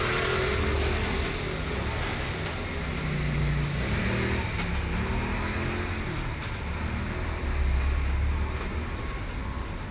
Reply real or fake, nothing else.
real